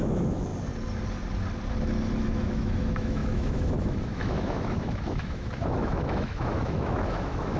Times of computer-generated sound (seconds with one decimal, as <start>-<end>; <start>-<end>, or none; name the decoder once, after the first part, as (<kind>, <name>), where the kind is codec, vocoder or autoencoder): 0.0-0.5 (autoencoder, DAC-VAE); 2.2-7.6